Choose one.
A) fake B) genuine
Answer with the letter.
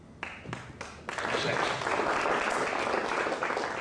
B